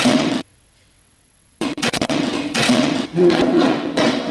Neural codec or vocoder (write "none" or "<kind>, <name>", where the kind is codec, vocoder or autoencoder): vocoder, WaveNeXt